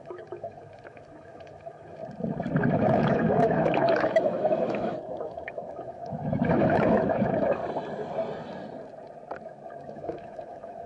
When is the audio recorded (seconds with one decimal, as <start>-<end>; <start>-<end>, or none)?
2.0-2.7; 7.6-9.8